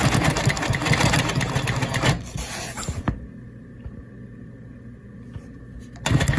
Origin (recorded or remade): recorded